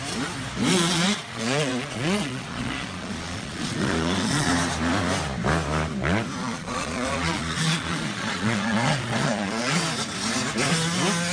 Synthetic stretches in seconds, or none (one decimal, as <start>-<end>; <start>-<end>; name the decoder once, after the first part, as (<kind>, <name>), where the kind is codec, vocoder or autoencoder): 0.7-4.5 (vocoder, Vocos); 6.4-9.8